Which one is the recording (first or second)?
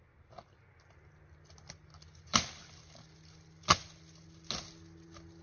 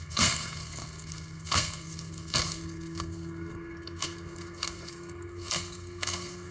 first